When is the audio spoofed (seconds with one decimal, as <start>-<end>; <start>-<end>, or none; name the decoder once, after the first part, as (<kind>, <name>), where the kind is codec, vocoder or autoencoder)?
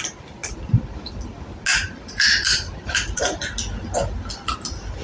1.7-3.3 (vocoder, BigVGAN v2)